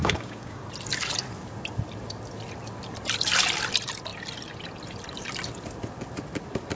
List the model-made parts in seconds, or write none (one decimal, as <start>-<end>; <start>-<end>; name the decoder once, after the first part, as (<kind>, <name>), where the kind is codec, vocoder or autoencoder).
0.0-0.6 (codec, DAC)